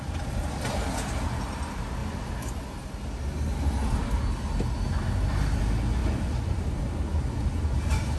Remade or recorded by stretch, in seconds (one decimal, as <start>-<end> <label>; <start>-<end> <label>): 0.0-8.2 recorded